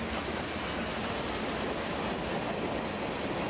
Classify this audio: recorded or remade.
recorded